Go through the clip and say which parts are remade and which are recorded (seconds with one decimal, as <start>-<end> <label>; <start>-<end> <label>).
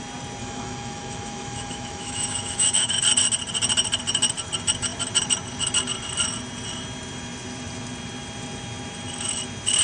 0.0-0.4 recorded; 0.4-3.0 remade; 3.0-9.8 recorded